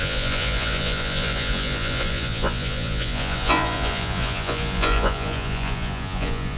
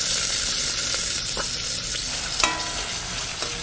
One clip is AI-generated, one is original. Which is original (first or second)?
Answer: second